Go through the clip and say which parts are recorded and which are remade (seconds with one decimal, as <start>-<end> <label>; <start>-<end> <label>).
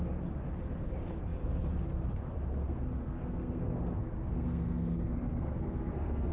0.0-2.6 recorded; 2.6-6.3 remade